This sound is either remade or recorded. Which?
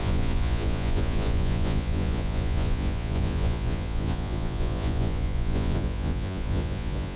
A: remade